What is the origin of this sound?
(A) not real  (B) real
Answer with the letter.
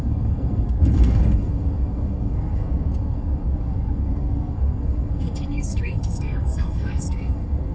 A